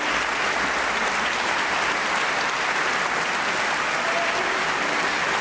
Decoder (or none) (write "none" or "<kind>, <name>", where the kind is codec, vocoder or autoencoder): none